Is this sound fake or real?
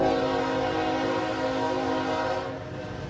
real